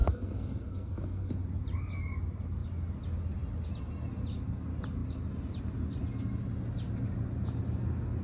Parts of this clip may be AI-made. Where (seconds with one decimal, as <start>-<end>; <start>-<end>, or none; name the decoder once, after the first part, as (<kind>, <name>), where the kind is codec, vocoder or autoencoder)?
0.0-1.3 (codec, SNAC)